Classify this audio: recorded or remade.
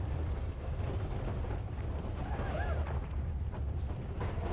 recorded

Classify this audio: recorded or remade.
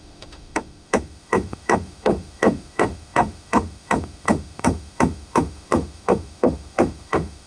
remade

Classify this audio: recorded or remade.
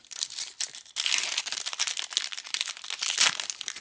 recorded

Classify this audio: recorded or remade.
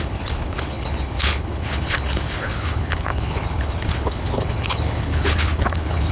remade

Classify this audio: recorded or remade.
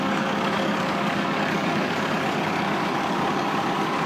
remade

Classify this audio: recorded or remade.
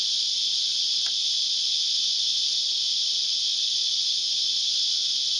recorded